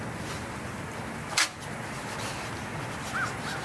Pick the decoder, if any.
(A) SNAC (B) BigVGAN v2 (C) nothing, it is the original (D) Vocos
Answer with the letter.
C